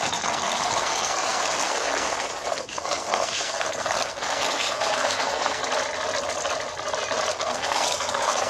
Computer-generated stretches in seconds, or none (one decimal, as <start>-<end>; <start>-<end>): 0.0-5.6; 7.3-8.5